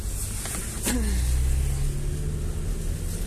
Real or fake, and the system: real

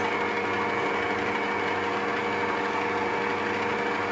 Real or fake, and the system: real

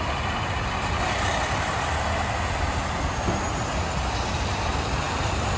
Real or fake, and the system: real